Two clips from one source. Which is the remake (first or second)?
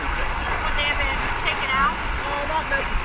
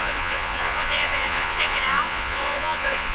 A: second